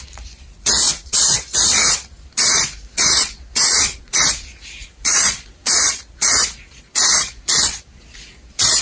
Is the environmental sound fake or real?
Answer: fake